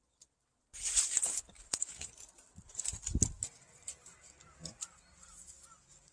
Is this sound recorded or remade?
recorded